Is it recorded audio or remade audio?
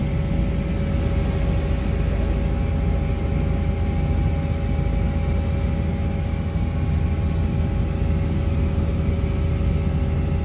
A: recorded